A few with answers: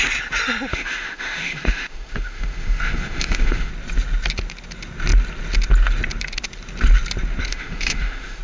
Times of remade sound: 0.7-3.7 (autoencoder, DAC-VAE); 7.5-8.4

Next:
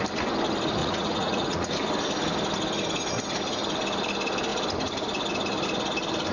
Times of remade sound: 0.8-1.7 (vocoder, Vocos)

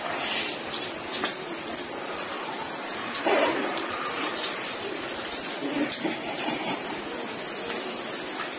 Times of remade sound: 2.3-6.9 (vocoder, BigVGAN v2)

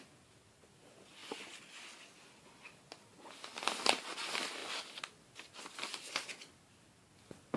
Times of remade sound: none

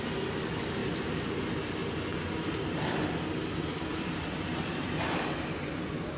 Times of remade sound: 0.8-1.4 (vocoder, BigVGAN v2)

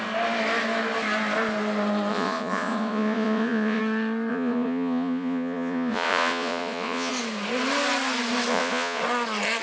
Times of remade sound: 2.1-3.8 (vocoder, Vocos); 4.3-7.1; 8.5-9.0

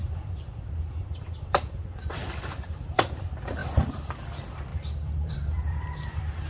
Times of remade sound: 0.0-6.5 (vocoder, BigVGAN v2)

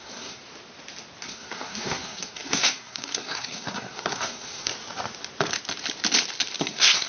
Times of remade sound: 0.0-0.4 (codec, SNAC); 1.2-4.7; 6.6-7.1